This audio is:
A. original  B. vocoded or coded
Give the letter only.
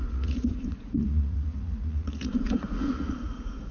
B